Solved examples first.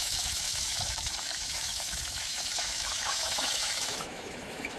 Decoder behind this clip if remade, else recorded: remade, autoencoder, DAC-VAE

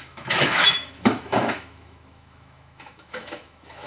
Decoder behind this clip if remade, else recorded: remade, autoencoder, DAC-VAE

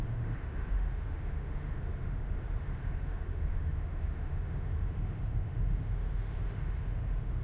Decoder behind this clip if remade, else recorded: remade, autoencoder, DAC-VAE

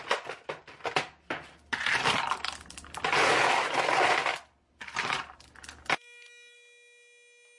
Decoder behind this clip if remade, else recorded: recorded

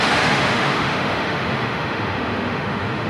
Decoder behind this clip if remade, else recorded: remade, autoencoder, DAC-VAE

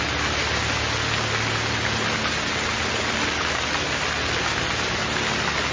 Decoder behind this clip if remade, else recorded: recorded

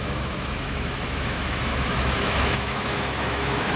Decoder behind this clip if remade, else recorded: remade, autoencoder, DAC-VAE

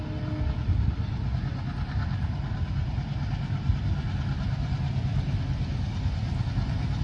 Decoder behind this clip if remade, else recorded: recorded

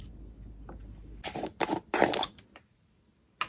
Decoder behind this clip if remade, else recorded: recorded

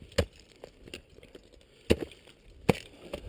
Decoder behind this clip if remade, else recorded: recorded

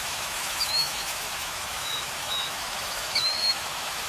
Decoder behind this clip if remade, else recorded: remade, autoencoder, DAC-VAE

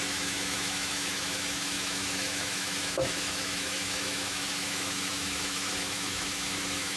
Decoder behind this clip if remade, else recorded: remade, autoencoder, DAC-VAE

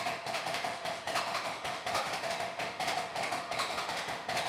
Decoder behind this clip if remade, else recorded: remade, autoencoder, DAC-VAE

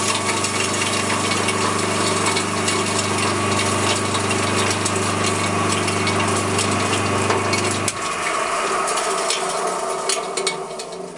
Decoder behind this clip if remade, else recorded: recorded